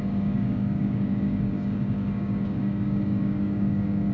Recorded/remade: remade